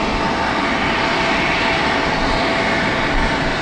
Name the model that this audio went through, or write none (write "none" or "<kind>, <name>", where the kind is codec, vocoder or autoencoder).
none